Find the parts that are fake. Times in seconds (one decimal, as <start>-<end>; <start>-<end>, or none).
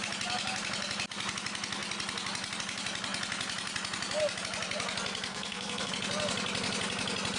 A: 5.3-5.9